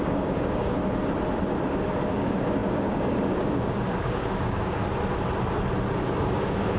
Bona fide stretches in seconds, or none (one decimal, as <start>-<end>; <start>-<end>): 0.8-1.7; 4.8-6.0